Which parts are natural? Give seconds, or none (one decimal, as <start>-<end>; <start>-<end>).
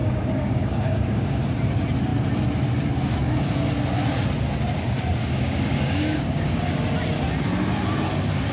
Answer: 1.4-5.2; 6.7-8.5